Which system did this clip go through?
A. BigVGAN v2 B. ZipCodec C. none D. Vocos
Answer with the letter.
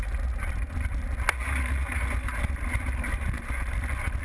C